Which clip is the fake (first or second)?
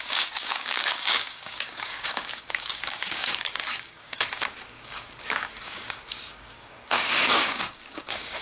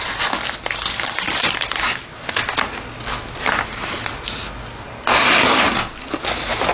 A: first